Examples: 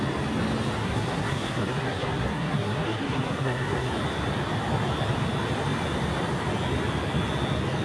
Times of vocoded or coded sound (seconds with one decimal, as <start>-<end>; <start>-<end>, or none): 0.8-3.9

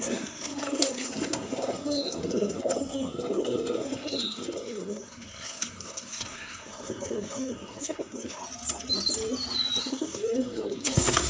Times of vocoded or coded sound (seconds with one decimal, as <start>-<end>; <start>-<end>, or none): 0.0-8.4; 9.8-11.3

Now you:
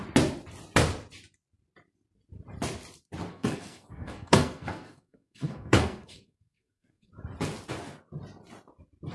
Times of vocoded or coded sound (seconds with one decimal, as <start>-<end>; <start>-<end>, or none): 3.3-7.1

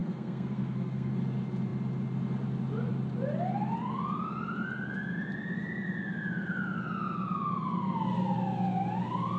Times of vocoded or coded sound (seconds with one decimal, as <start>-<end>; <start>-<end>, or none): 0.0-1.1

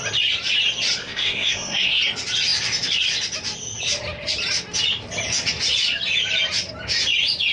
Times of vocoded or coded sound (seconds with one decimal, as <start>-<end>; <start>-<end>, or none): 1.0-2.0